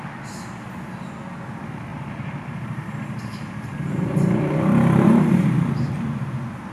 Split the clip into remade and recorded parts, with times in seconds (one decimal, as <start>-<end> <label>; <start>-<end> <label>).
0.0-1.9 recorded; 1.9-5.9 remade; 5.9-6.7 recorded